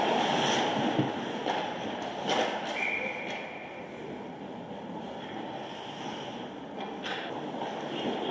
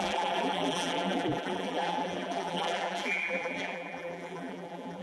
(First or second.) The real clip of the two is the first